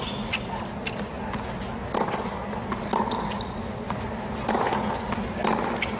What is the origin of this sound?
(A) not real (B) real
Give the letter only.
B